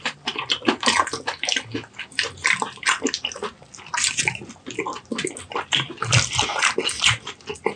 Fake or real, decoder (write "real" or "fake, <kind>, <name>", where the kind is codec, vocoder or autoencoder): real